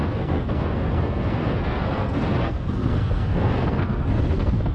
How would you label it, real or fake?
fake